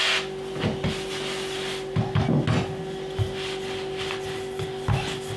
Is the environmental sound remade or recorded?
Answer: recorded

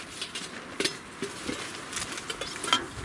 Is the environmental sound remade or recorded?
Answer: recorded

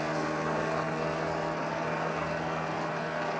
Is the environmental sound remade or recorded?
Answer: remade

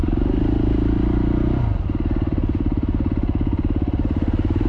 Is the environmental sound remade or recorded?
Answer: recorded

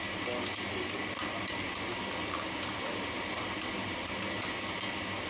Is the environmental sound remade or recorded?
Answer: recorded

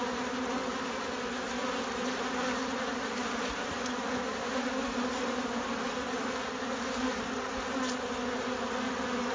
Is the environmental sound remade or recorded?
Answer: recorded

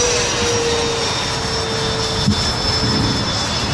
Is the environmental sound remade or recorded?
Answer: recorded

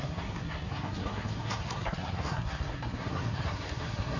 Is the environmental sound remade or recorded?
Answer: remade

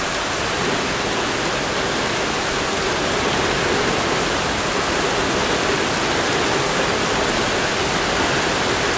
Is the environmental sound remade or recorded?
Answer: recorded